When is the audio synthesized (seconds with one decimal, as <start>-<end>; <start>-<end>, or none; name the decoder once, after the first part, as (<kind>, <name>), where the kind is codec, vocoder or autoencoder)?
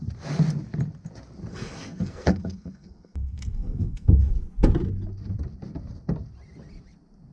1.5-4.3 (codec, SNAC)